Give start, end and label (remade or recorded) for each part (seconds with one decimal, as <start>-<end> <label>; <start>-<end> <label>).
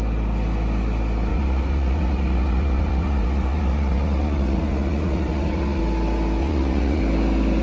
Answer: 0.0-1.3 recorded; 1.3-5.8 remade; 5.8-6.4 recorded; 6.4-7.0 remade; 7.0-7.6 recorded